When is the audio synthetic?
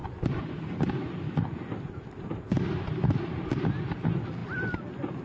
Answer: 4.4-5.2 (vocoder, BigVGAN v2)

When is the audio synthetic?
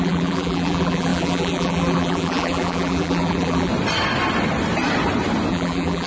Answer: 0.0-3.7 (vocoder, BigVGAN v2); 5.5-6.1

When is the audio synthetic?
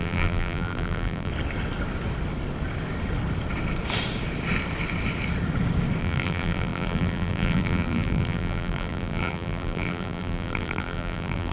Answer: 0.0-1.3 (vocoder, BigVGAN v2); 6.0-11.5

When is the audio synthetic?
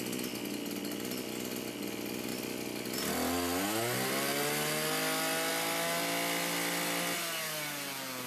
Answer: none